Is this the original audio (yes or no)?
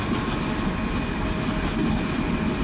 yes